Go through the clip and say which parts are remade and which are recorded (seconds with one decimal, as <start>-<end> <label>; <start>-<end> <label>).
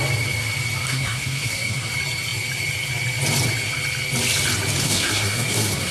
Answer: 0.0-0.9 recorded; 0.9-1.9 remade; 1.9-4.8 recorded; 4.8-5.9 remade